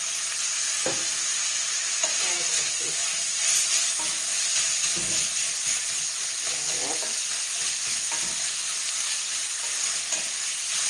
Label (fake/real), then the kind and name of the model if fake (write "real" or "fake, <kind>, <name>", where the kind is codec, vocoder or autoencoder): real